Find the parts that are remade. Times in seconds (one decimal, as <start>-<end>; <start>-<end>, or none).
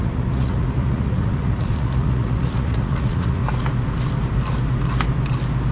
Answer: 0.0-3.4